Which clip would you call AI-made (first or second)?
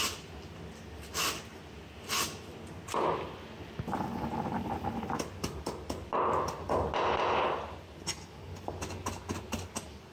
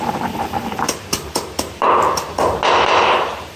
second